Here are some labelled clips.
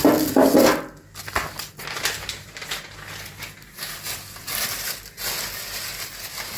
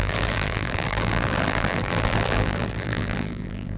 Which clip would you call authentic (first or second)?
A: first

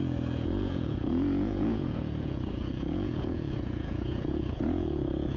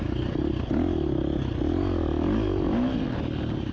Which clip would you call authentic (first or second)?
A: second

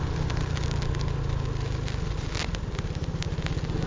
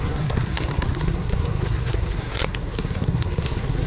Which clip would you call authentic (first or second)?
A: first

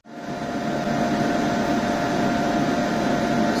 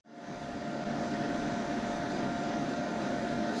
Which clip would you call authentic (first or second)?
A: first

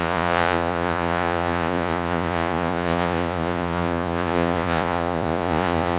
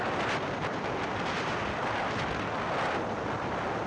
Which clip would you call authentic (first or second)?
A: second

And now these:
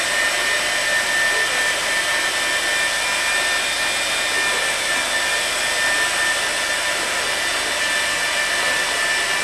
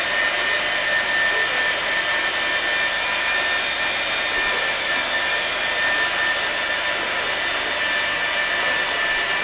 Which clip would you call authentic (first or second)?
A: first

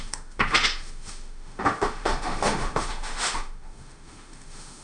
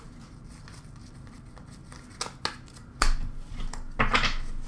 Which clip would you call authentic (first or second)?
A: second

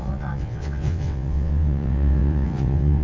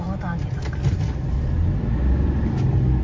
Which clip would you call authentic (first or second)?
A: second